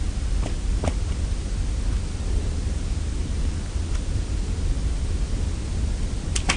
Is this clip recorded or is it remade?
recorded